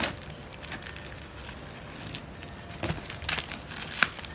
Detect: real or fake real